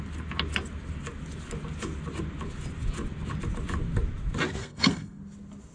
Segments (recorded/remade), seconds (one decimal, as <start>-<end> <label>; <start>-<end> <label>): 0.0-4.6 recorded; 4.6-5.2 remade; 5.2-5.7 recorded